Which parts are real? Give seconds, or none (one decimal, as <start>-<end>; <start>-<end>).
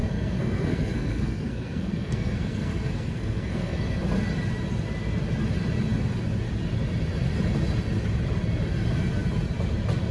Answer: 4.0-10.1